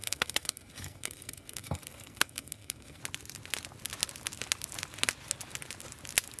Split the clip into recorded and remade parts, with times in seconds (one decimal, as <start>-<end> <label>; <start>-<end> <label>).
0.0-3.0 remade; 3.0-6.4 recorded